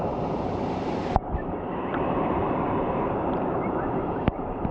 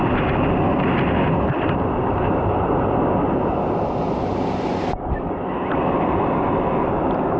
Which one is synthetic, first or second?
first